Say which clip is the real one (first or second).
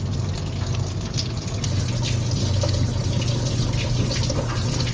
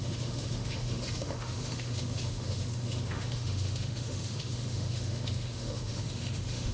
first